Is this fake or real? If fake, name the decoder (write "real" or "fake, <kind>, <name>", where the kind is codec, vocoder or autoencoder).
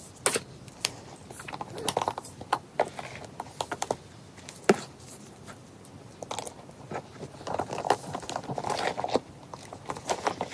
real